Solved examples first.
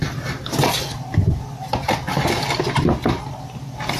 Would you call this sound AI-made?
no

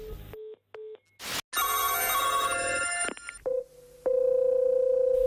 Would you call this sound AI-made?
no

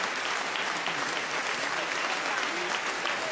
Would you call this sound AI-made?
no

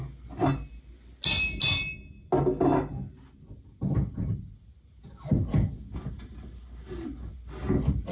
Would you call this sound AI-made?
no